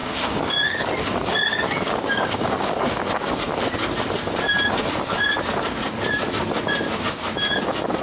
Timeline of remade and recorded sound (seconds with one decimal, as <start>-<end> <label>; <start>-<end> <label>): 0.0-3.3 remade; 3.3-8.0 recorded